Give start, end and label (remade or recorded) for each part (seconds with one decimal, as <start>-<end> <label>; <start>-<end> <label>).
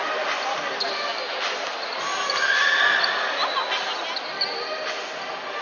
0.0-5.6 recorded